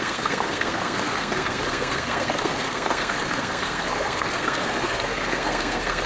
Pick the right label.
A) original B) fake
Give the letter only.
B